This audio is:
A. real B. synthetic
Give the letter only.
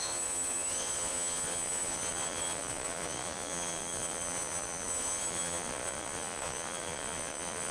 B